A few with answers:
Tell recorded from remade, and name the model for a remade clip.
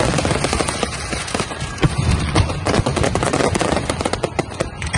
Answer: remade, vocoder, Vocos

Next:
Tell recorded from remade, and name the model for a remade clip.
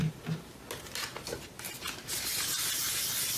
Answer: recorded